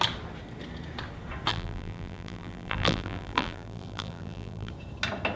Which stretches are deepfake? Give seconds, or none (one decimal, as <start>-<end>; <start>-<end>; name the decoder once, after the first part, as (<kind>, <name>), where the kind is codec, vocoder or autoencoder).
1.5-4.7 (vocoder, BigVGAN v2)